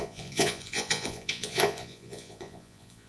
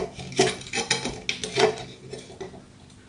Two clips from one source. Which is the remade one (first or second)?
first